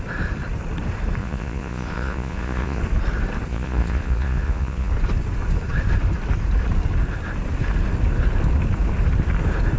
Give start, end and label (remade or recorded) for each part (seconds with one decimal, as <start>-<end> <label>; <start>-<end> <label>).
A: 0.0-1.2 recorded; 1.2-2.8 remade; 2.8-3.5 recorded; 3.5-4.9 remade; 4.9-9.8 recorded